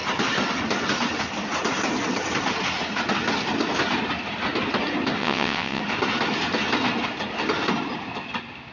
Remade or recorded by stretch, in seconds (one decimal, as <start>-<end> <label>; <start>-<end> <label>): 0.0-5.2 recorded; 5.2-5.8 remade; 5.8-8.7 recorded